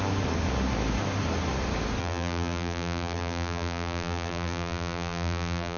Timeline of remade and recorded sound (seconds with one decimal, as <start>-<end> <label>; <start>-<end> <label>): 0.0-2.0 recorded; 2.0-5.8 remade